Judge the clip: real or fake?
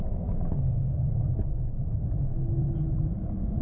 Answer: real